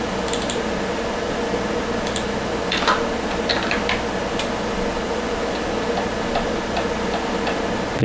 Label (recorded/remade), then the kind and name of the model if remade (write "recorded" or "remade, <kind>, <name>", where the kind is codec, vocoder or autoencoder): recorded